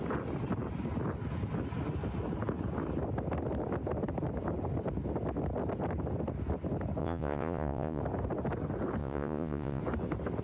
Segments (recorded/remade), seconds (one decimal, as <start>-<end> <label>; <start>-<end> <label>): 0.0-7.0 recorded; 7.0-8.0 remade; 8.0-9.0 recorded; 9.0-9.8 remade; 9.8-10.4 recorded